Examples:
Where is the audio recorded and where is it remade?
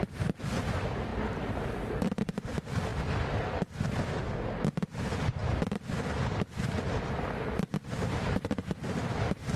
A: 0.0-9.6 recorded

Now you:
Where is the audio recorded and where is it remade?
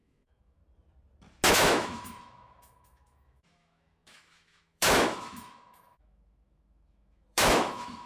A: 0.0-0.6 remade; 0.6-1.5 recorded; 1.5-8.1 remade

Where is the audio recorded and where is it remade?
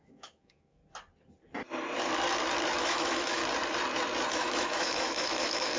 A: 0.0-0.8 remade; 0.8-2.8 recorded; 2.8-3.4 remade; 3.4-4.3 recorded; 4.3-5.8 remade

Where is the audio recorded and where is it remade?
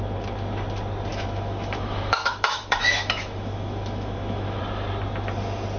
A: 0.0-1.1 recorded; 1.1-4.6 remade; 4.6-5.8 recorded